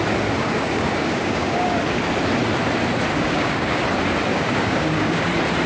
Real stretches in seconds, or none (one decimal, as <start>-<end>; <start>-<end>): 0.0-0.4; 1.8-3.1; 3.8-4.3; 5.3-5.7